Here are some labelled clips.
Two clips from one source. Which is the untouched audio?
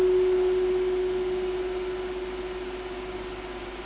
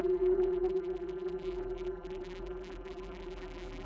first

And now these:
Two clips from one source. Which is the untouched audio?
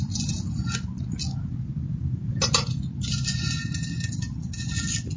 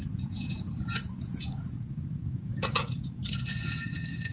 first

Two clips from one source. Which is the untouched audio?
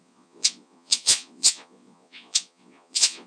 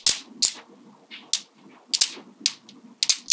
second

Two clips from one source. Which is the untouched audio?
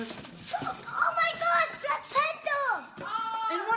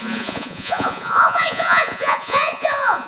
first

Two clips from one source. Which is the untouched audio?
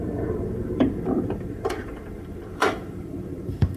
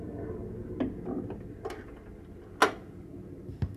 second